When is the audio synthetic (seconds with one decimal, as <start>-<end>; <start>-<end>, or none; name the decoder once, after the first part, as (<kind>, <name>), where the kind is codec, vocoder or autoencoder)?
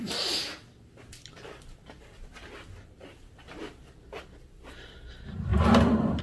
0.0-5.5 (vocoder, BigVGAN v2)